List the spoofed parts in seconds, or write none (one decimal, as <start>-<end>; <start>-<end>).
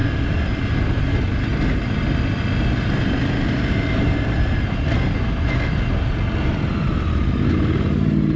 none